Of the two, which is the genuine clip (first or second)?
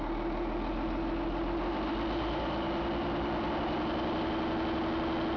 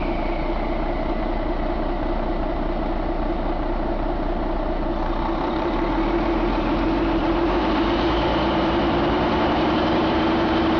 first